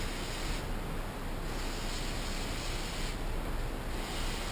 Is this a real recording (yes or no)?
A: yes